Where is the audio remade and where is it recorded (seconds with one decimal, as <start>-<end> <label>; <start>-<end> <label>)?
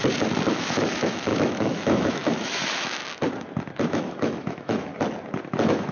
0.0-0.5 recorded; 0.5-3.0 remade; 3.0-3.9 recorded; 3.9-4.9 remade; 4.9-5.5 recorded; 5.5-5.9 remade